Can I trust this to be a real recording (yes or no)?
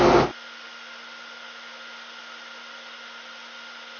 yes